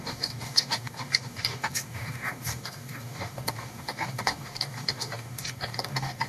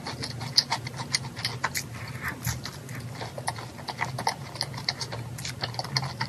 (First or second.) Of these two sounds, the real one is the second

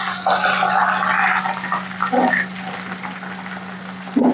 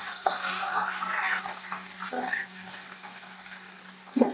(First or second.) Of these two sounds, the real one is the first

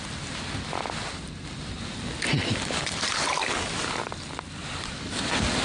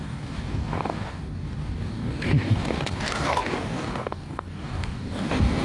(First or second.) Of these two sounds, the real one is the first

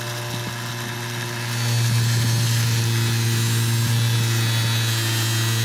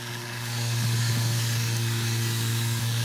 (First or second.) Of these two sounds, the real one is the first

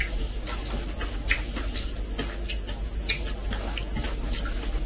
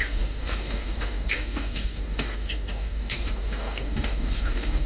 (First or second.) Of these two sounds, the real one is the first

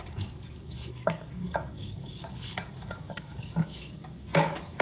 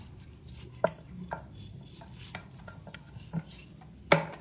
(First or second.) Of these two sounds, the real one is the second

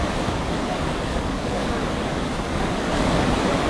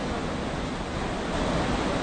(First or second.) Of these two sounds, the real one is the second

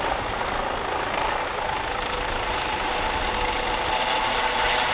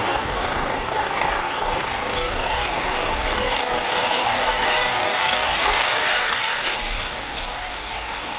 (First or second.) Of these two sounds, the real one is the first